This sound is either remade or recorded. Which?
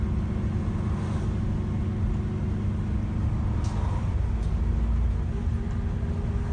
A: recorded